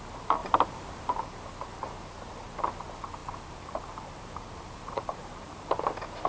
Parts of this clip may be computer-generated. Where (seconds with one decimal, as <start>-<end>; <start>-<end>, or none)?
0.4-1.1; 3.2-5.8